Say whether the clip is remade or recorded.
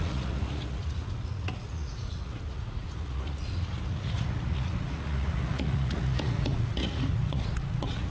remade